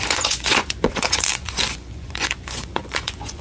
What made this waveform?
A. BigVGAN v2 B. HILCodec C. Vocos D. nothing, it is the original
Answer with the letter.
C